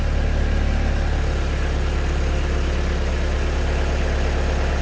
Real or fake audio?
real